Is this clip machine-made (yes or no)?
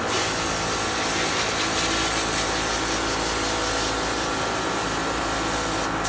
no